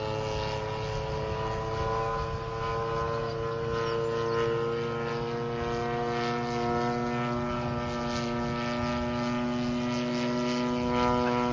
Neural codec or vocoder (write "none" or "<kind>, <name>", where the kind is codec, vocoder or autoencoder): none